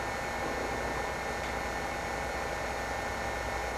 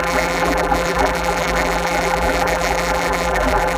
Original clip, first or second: first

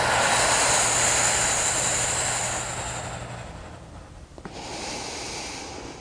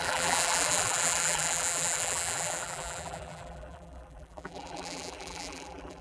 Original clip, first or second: first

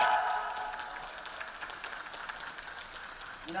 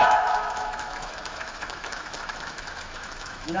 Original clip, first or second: first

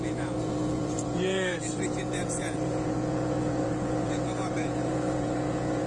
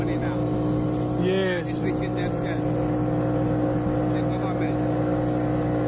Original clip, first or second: second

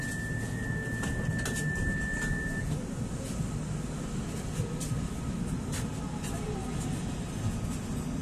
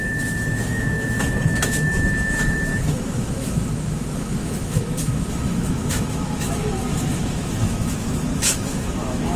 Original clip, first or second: first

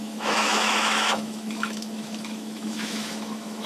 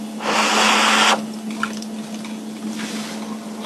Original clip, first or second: second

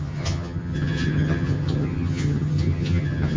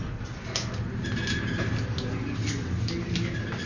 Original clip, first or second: second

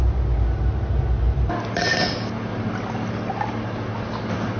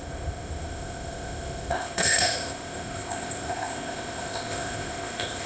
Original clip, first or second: first